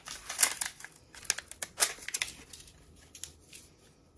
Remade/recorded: recorded